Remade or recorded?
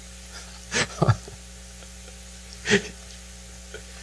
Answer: recorded